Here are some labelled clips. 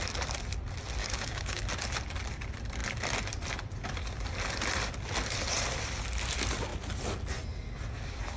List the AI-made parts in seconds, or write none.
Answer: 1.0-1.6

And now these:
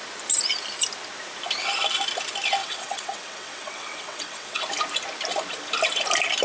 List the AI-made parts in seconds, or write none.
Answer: 2.6-4.6

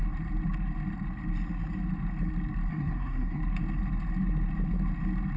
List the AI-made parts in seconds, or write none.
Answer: 2.7-3.4

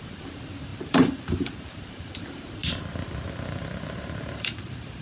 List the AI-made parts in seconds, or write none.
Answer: 0.0-2.6; 3.3-5.0

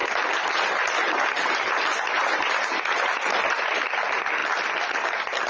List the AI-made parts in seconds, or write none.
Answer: 4.4-4.9